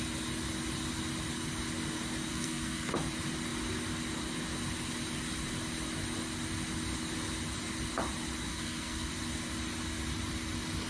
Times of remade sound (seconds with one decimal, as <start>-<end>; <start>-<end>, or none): 2.3-2.9; 8.5-9.1